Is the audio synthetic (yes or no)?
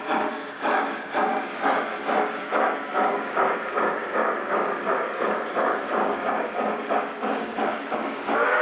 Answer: yes